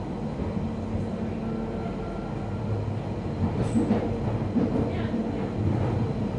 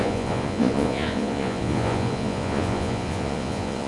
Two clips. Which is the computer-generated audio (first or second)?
second